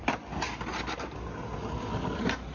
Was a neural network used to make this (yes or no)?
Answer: no